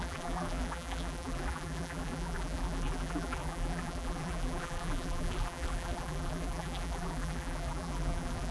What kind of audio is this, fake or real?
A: fake